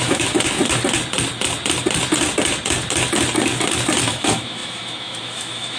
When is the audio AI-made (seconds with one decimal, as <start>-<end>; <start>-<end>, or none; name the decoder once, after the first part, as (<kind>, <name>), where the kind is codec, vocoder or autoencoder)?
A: 0.0-0.6 (autoencoder, DAC-VAE); 4.1-5.8